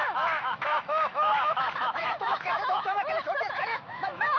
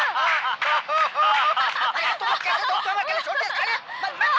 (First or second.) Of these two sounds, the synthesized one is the first